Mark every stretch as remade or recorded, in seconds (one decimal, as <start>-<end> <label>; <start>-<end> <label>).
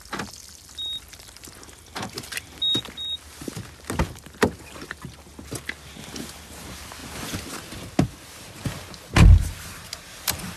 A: 0.0-10.6 recorded